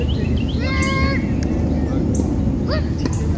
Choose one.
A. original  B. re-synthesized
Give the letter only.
A